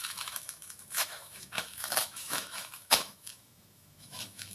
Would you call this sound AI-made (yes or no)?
yes